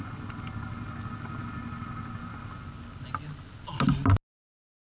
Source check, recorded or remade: recorded